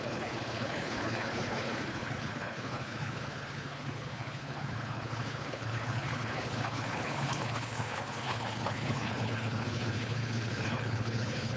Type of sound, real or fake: fake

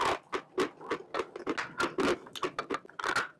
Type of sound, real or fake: real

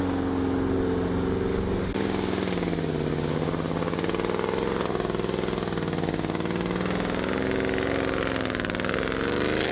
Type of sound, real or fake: real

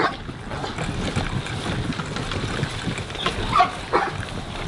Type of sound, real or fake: real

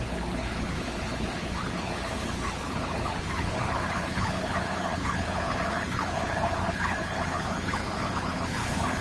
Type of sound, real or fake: fake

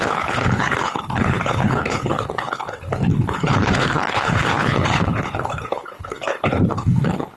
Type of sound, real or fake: fake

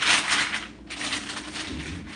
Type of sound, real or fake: real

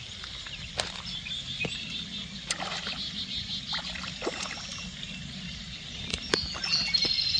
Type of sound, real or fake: real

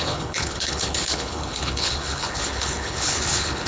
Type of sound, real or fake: fake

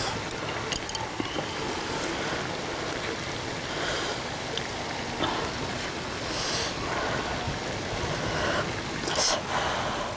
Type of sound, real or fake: real